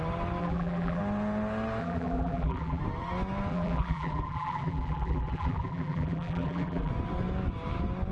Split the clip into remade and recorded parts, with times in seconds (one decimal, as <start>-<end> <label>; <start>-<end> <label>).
0.0-0.4 recorded; 0.4-1.0 remade; 1.0-1.8 recorded; 1.8-2.8 remade; 2.8-3.5 recorded; 3.5-6.9 remade; 6.9-8.1 recorded